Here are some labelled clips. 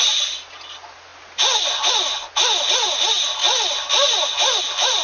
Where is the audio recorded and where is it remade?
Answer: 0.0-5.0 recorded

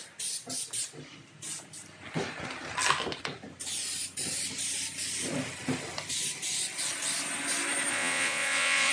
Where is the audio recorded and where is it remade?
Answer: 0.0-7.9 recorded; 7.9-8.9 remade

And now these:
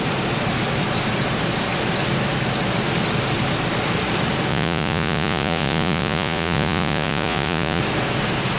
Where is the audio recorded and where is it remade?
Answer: 0.0-4.5 recorded; 4.5-7.8 remade; 7.8-8.6 recorded

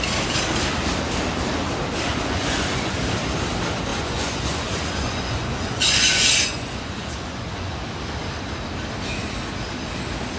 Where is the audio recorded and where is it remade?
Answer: 0.0-2.1 recorded; 2.1-3.0 remade; 3.0-3.9 recorded; 3.9-7.8 remade; 7.8-10.4 recorded

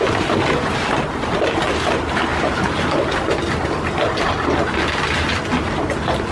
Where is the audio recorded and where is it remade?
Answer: 0.0-6.3 recorded

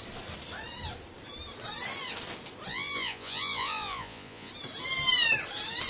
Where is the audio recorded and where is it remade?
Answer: 0.0-2.7 recorded; 2.7-4.5 remade; 4.5-5.9 recorded

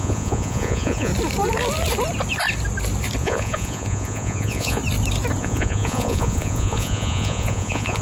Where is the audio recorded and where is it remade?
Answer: 0.0-1.1 remade; 1.1-3.2 recorded; 3.2-4.8 remade; 4.8-5.4 recorded; 5.4-8.0 remade

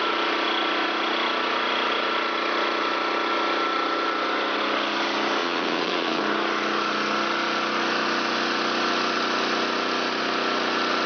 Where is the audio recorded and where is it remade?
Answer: 0.0-5.4 recorded; 5.4-6.2 remade; 6.2-11.1 recorded